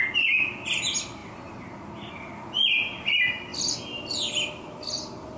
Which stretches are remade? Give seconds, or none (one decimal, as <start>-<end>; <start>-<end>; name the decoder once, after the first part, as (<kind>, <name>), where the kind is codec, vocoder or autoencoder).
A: none